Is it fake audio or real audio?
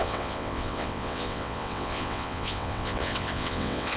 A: fake